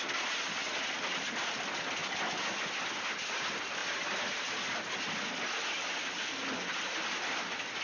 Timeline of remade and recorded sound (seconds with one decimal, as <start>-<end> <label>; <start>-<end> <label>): 0.0-7.8 recorded